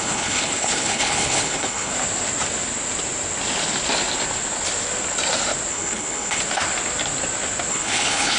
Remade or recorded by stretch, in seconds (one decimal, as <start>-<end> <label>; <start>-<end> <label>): 0.0-1.9 remade; 1.9-5.7 recorded; 5.7-6.4 remade; 6.4-7.7 recorded; 7.7-8.4 remade